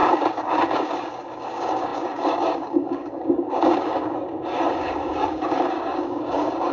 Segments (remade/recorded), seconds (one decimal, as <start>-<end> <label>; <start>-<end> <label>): 0.0-6.7 remade